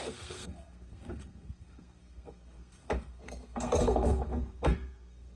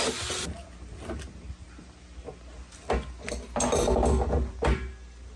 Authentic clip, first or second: second